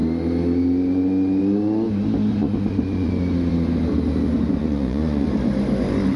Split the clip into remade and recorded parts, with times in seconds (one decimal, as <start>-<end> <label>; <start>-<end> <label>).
0.0-2.3 recorded; 2.3-3.1 remade; 3.1-4.6 recorded; 4.6-5.3 remade; 5.3-6.2 recorded